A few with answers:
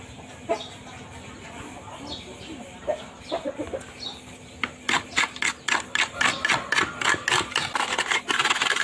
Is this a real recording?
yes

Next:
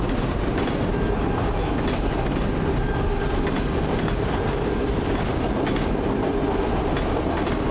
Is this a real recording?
yes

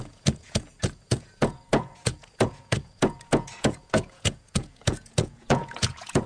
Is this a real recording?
no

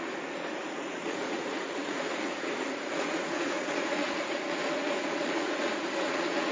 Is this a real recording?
no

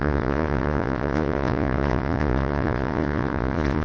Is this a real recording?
no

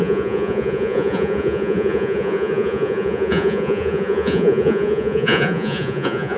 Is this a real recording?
no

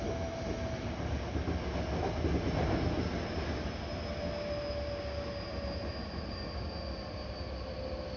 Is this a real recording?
yes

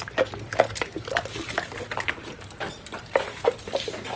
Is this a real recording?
yes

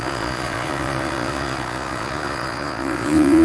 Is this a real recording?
no